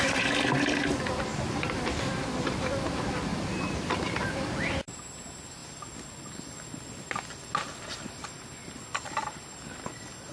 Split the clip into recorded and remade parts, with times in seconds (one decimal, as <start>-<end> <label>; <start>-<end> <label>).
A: 0.0-1.3 remade; 1.3-2.5 recorded; 2.5-3.3 remade; 3.3-4.4 recorded; 4.4-5.6 remade; 5.6-8.1 recorded; 8.1-10.3 remade